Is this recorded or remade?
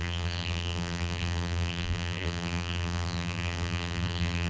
remade